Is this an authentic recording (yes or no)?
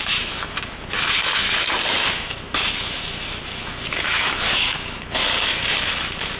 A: no